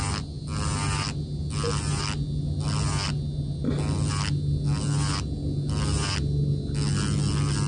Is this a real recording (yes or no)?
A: yes